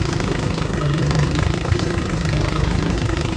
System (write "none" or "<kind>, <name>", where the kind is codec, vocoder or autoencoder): codec, SNAC